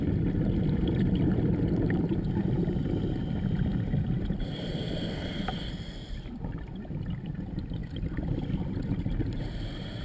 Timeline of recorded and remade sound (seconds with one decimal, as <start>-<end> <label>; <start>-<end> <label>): 0.0-10.0 recorded